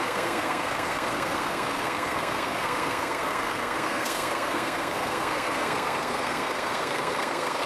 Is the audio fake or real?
fake